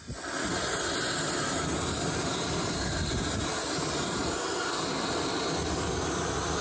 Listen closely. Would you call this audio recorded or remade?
recorded